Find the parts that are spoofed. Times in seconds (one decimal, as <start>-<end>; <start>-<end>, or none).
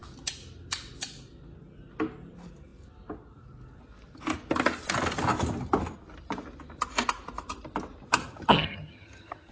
8.2-9.5